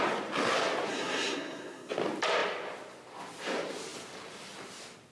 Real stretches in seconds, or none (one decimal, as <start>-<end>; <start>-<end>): 0.0-0.9; 1.9-5.1